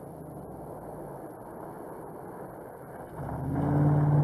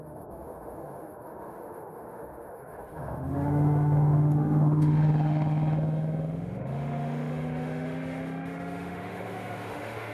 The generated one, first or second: second